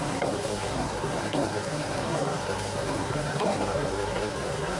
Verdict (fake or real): fake